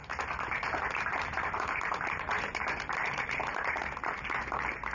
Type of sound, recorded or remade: remade